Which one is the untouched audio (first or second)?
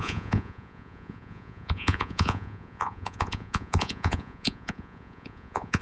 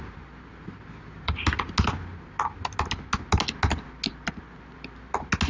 second